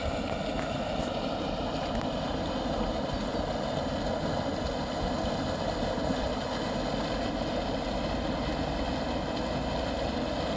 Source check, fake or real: real